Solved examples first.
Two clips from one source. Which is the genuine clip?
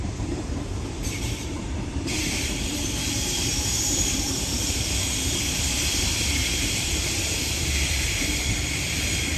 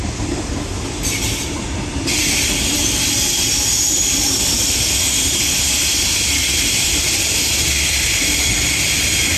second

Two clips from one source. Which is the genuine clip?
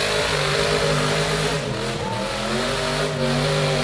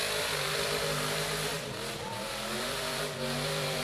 first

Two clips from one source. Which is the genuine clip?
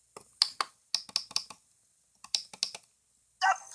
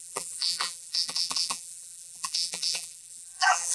first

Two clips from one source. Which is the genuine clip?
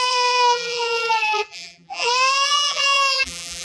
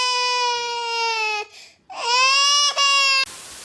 second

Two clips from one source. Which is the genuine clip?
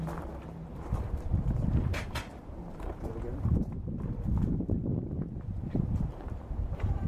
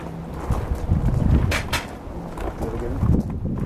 second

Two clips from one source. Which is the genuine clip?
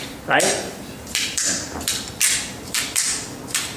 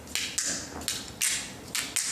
second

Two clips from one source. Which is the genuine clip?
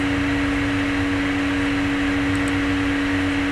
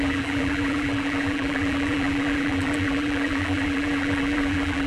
first